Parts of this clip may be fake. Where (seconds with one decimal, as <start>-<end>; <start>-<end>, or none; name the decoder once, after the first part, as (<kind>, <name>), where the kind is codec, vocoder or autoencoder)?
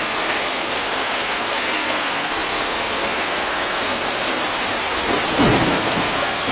0.0-4.3 (codec, SNAC); 5.7-6.5